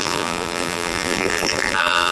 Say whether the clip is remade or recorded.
remade